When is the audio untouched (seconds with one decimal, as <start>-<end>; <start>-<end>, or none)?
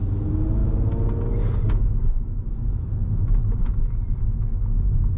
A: 0.0-5.2